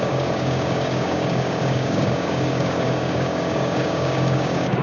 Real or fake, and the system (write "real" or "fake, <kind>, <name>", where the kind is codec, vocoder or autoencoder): fake, codec, DAC